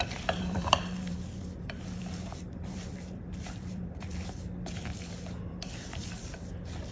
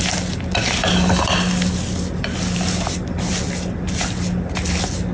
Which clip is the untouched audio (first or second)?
second